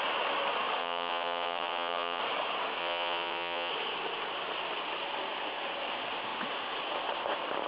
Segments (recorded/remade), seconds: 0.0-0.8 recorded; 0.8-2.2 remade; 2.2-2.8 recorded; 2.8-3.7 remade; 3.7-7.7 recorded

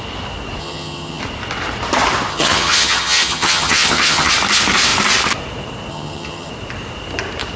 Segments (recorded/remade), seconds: 0.0-0.6 recorded; 0.6-1.2 remade; 1.2-2.3 recorded; 2.3-4.3 remade; 4.3-5.9 recorded; 5.9-6.5 remade; 6.5-7.6 recorded

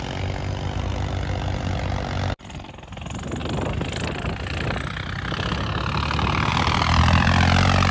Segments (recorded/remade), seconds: 0.0-7.9 recorded

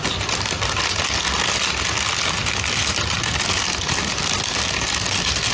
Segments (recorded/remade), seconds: 0.0-5.5 recorded